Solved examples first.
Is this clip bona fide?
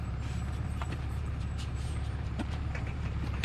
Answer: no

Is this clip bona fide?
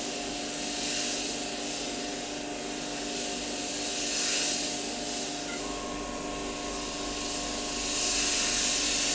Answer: yes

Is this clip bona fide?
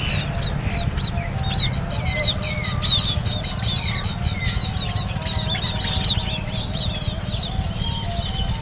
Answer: yes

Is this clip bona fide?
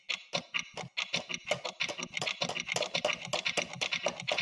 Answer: yes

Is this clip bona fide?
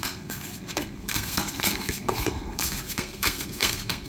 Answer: no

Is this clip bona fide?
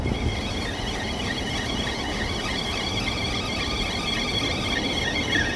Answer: yes